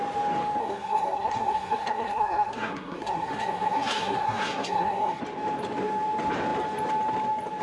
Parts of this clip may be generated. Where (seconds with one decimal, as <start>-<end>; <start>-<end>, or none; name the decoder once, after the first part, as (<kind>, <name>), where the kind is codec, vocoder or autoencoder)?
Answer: 0.6-5.2 (codec, SNAC)